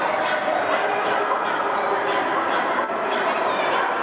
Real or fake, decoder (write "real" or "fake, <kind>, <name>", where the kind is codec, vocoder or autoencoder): real